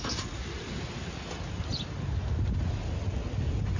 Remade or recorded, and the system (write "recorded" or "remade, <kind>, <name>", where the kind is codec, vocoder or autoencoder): recorded